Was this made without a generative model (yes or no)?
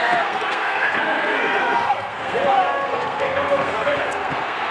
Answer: no